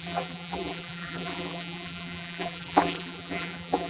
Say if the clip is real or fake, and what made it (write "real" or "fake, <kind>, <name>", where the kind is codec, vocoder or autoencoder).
fake, vocoder, BigVGAN v2